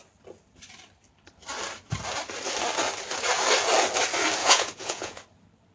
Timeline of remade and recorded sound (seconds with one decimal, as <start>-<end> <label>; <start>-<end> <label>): 0.0-4.4 recorded; 4.4-5.2 remade; 5.2-5.7 recorded